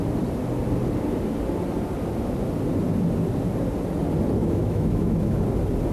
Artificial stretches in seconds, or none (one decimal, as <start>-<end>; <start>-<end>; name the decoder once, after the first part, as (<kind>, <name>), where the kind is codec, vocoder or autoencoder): 4.4-5.4 (autoencoder, DAC-VAE)